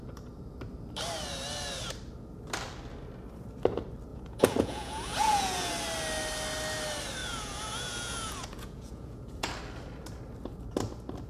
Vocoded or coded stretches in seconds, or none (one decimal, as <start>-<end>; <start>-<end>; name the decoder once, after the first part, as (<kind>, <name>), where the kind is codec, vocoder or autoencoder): 4.1-5.7 (vocoder, Vocos); 7.2-9.5